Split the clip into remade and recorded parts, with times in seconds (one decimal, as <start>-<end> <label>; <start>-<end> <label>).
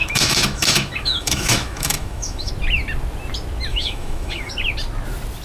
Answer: 0.0-2.5 remade; 2.5-3.7 recorded; 3.7-4.5 remade; 4.5-5.4 recorded